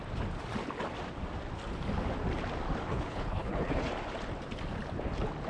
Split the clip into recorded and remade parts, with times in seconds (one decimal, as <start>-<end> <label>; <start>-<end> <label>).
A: 0.0-2.9 recorded; 2.9-3.9 remade; 3.9-5.5 recorded